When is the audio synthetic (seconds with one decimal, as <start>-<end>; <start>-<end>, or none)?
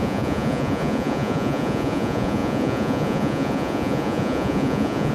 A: 0.0-5.1